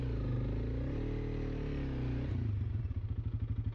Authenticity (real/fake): real